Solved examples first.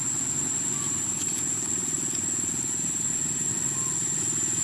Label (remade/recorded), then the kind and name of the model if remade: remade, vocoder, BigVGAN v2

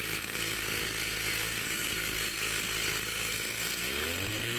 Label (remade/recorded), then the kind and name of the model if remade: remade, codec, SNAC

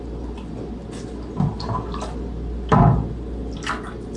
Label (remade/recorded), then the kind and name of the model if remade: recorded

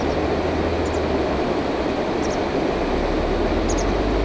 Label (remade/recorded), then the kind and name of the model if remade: recorded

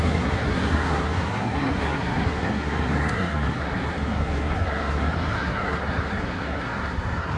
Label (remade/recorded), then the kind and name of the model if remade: remade, codec, SNAC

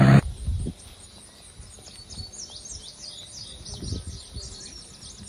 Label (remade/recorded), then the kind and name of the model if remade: recorded